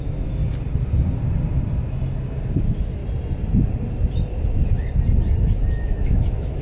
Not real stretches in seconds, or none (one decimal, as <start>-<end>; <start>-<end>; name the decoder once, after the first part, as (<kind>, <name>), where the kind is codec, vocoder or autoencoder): 0.0-0.4 (autoencoder, DAC-VAE); 2.5-3.0; 5.7-6.6